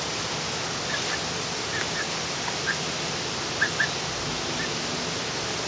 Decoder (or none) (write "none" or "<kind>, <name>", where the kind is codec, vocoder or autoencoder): none